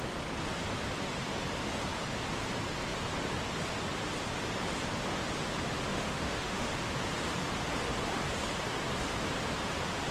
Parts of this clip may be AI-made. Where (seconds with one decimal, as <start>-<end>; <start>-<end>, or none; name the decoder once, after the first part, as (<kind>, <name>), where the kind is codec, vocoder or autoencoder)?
5.9-6.7 (autoencoder, DAC-VAE)